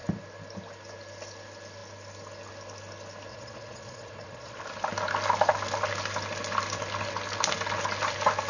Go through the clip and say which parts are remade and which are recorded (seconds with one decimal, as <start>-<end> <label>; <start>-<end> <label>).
0.0-3.3 recorded; 3.3-4.6 remade; 4.6-8.5 recorded